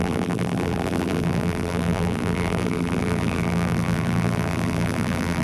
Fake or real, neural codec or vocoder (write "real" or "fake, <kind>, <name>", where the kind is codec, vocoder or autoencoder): fake, vocoder, BigVGAN v2